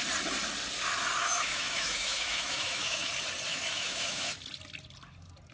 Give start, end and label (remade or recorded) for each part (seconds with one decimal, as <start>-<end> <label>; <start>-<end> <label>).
0.0-1.2 recorded; 1.2-3.1 remade; 3.1-3.5 recorded; 3.5-4.5 remade; 4.5-5.5 recorded